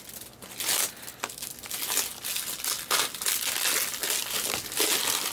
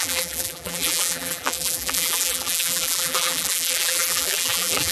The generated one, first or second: second